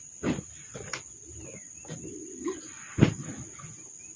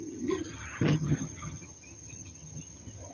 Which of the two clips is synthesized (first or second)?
second